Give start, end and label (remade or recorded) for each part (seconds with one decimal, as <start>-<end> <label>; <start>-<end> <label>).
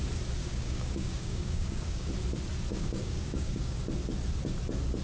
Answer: 0.0-0.4 recorded; 0.4-2.1 remade; 2.1-2.7 recorded; 2.7-3.8 remade; 3.8-5.0 recorded